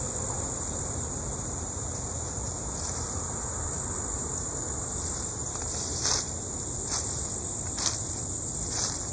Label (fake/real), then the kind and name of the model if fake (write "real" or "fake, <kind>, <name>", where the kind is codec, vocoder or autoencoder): real